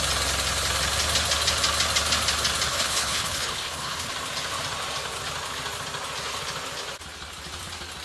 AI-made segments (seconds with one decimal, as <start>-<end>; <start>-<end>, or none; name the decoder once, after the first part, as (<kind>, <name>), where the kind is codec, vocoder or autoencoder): 2.7-4.1 (codec, HILCodec)